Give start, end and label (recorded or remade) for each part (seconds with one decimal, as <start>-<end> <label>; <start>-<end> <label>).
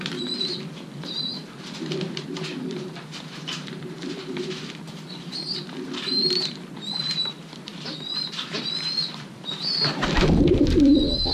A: 0.0-11.3 remade